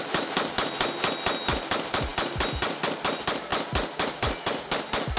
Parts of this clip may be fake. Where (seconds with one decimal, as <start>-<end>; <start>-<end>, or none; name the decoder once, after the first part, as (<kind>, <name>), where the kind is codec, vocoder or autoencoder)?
none